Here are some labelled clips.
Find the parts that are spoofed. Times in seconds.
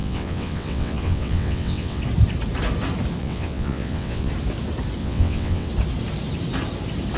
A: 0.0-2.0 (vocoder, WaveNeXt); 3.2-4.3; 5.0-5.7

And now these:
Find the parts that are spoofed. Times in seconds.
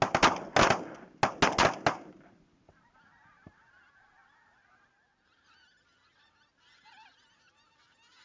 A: none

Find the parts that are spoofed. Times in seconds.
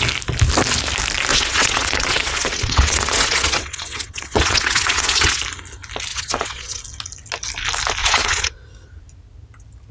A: 1.3-5.4 (vocoder, WaveNeXt); 6.1-6.8; 8.0-8.7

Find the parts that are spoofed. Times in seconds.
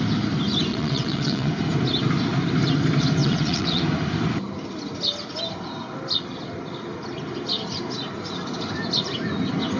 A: 0.7-1.5 (vocoder, WaveNeXt); 3.2-3.8